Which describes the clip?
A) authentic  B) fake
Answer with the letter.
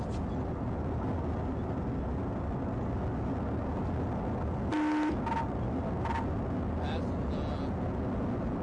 A